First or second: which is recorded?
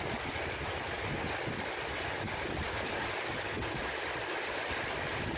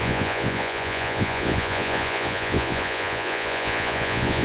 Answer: first